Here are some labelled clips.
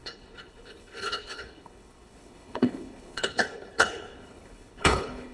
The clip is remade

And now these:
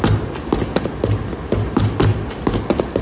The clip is recorded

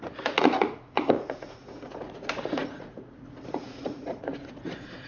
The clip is remade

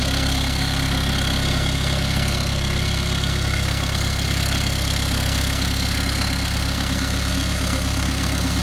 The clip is remade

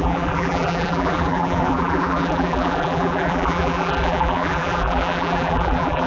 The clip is remade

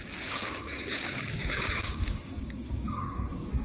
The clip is remade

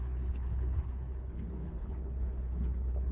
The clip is remade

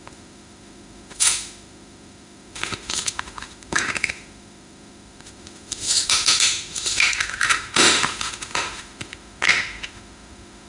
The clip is remade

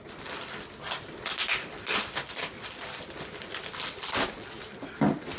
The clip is recorded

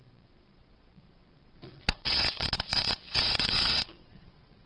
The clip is remade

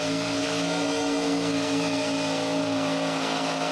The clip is remade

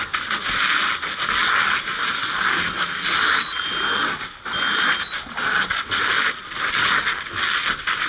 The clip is recorded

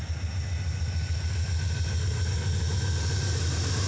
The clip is recorded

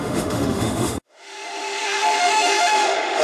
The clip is remade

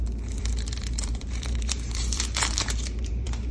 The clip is remade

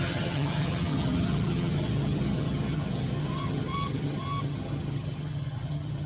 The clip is remade